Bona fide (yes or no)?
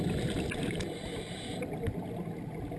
yes